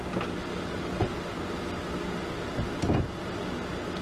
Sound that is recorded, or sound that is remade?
recorded